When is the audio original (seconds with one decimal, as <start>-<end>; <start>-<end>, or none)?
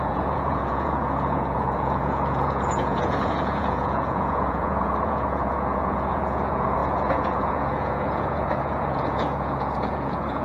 none